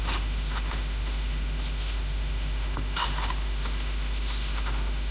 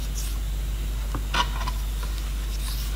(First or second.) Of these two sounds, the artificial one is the first